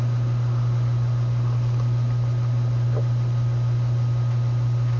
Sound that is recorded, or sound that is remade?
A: recorded